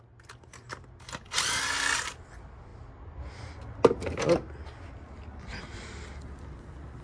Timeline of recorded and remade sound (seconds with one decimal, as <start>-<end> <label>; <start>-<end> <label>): 0.0-7.0 recorded